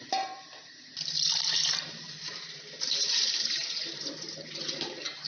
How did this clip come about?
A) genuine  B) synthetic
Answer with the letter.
B